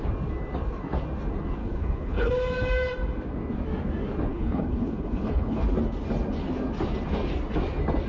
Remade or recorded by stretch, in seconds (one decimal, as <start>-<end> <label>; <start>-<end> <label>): 0.0-1.6 recorded; 1.6-2.3 remade; 2.3-4.3 recorded; 4.3-5.6 remade; 5.6-8.1 recorded